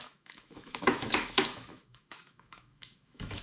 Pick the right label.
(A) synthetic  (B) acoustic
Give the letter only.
A